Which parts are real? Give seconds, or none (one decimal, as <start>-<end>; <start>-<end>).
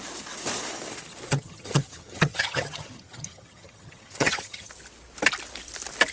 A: 0.0-1.3; 4.7-6.1